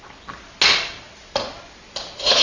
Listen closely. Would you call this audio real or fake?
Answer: real